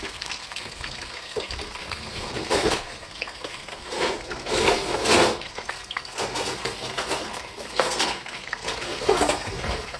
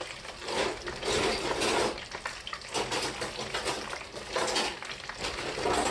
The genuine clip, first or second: second